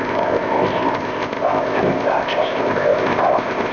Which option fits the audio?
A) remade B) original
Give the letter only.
A